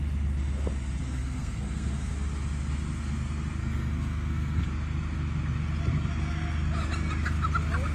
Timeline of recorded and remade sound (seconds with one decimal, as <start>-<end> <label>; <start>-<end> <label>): 0.0-1.0 recorded; 1.0-2.1 remade; 2.1-3.6 recorded; 3.6-4.7 remade; 4.7-7.9 recorded